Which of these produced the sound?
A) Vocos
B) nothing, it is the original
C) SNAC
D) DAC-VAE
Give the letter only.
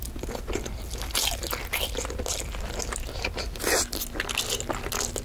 B